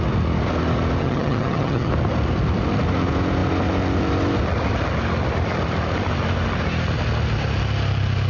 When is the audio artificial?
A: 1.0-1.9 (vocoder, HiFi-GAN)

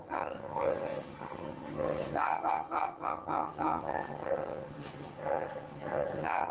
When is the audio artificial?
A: 0.0-6.5 (vocoder, HiFi-GAN)